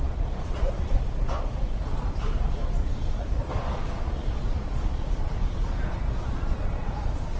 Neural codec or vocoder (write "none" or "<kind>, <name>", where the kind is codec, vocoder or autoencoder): vocoder, Vocos